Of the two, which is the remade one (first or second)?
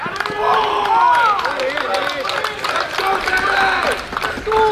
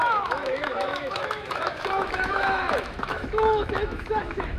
second